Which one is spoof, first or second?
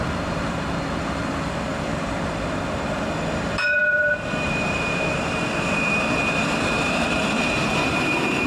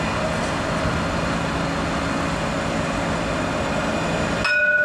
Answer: first